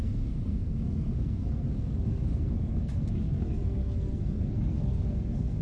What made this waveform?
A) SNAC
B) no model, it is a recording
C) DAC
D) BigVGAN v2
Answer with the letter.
A